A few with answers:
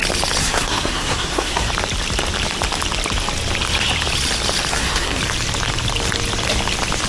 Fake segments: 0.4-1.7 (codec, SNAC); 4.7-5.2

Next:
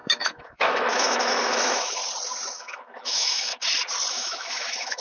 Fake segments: 0.0-2.0 (autoencoder, DAC-VAE); 2.5-3.5; 4.1-5.0

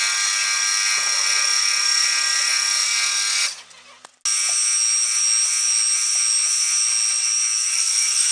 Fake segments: 7.7-8.3 (codec, SNAC)

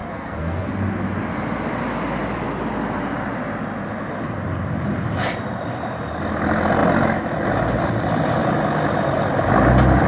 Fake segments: 0.0-0.7 (codec, SNAC)

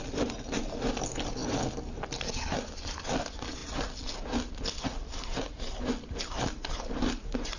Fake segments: none